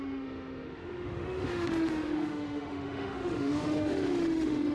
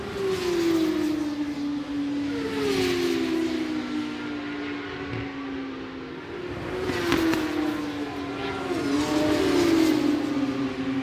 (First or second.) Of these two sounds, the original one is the second